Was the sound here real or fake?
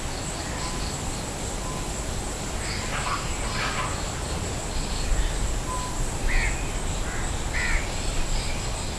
real